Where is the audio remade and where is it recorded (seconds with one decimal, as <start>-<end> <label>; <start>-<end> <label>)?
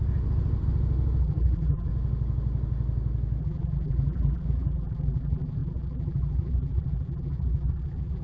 0.0-1.2 recorded; 1.2-1.9 remade; 1.9-3.4 recorded; 3.4-8.2 remade